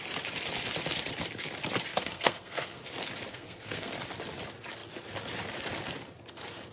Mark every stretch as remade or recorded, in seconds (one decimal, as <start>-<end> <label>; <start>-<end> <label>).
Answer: 0.0-1.9 recorded; 1.9-2.8 remade; 2.8-3.3 recorded; 3.3-3.9 remade; 3.9-6.7 recorded